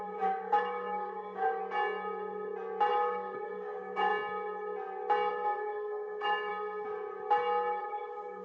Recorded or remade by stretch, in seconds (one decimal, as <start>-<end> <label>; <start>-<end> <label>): 0.0-1.6 remade; 1.6-2.9 recorded; 2.9-4.1 remade; 4.1-5.3 recorded; 5.3-6.5 remade; 6.5-7.8 recorded; 7.8-8.4 remade